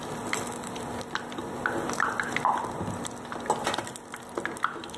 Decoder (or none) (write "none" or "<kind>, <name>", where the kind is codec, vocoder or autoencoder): none